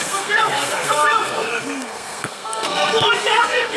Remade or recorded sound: remade